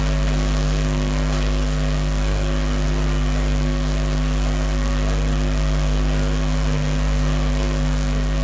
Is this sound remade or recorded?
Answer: remade